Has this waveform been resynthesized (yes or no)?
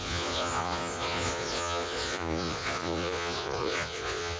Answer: yes